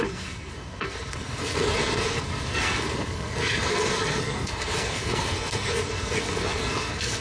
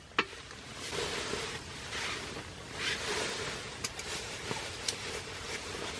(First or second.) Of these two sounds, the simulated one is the first